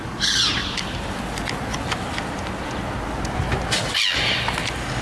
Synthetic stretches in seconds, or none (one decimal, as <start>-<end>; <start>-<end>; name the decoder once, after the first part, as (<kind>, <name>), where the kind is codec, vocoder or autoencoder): 0.6-1.2 (vocoder, BigVGAN v2); 1.7-2.8